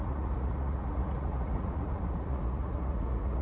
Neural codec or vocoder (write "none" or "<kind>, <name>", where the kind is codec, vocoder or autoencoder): vocoder, Vocos